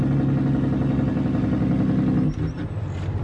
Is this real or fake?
real